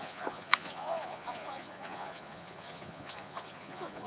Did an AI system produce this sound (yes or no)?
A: yes